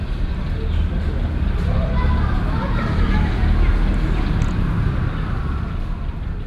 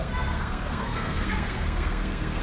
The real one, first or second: first